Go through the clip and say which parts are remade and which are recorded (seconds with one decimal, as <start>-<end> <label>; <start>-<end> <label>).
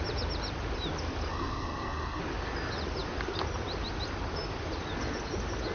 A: 0.0-1.3 recorded; 1.3-2.2 remade; 2.2-5.7 recorded